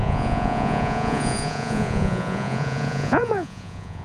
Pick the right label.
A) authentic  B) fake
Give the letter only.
B